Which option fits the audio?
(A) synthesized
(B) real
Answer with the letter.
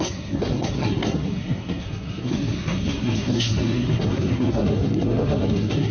A